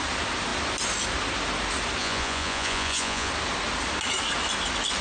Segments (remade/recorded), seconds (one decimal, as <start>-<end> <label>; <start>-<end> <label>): 0.0-2.0 recorded; 2.0-3.3 remade; 3.3-5.0 recorded

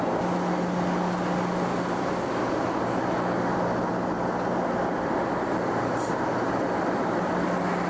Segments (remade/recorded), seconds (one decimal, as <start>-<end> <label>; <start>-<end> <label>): 0.0-7.9 recorded

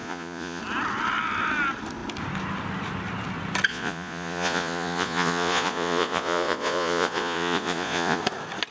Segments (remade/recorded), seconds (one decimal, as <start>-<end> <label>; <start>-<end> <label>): 0.0-0.6 remade; 0.6-3.7 recorded; 3.7-8.2 remade; 8.2-8.7 recorded

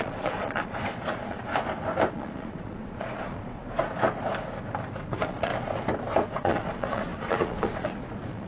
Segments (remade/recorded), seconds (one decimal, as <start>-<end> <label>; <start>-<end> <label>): 0.0-1.5 remade; 1.5-2.1 recorded; 2.1-3.6 remade; 3.6-5.1 recorded; 5.1-5.5 remade; 5.5-6.3 recorded; 6.3-8.5 remade

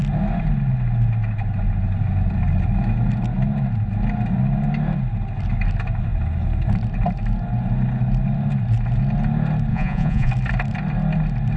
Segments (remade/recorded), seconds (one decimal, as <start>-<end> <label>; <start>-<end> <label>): 0.0-9.7 recorded; 9.7-10.3 remade; 10.3-11.6 recorded

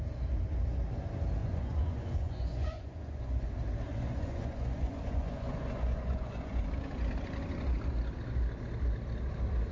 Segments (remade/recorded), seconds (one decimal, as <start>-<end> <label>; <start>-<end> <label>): 0.0-1.4 recorded; 1.4-3.5 remade; 3.5-3.9 recorded; 3.9-6.6 remade; 6.6-9.7 recorded